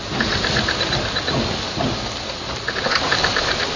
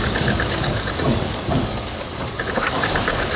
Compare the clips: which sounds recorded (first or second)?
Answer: first